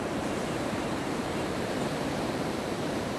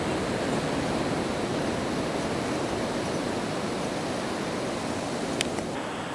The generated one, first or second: first